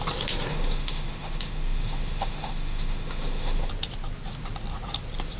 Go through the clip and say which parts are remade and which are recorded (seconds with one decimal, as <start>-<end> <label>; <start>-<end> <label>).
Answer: 0.0-0.5 recorded; 0.5-3.7 remade; 3.7-5.4 recorded

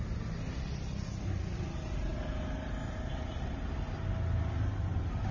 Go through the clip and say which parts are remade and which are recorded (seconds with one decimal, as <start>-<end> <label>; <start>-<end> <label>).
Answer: 0.0-5.3 recorded